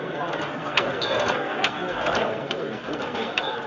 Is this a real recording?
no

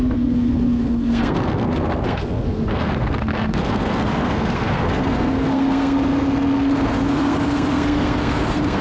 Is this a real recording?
no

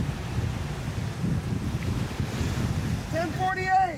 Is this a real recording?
yes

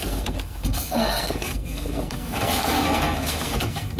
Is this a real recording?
no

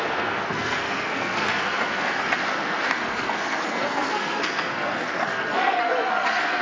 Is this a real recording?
no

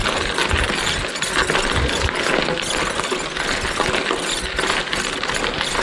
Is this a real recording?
yes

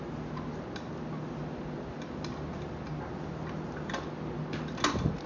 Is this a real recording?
yes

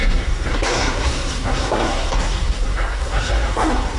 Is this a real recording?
no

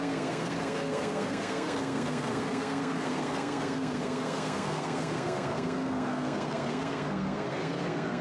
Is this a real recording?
no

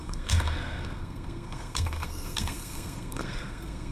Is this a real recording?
no